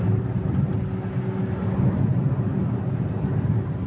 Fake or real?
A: real